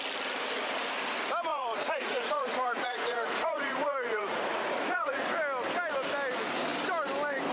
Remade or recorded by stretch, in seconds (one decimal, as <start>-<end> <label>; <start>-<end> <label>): 0.0-1.5 recorded; 1.5-5.3 remade; 5.3-7.5 recorded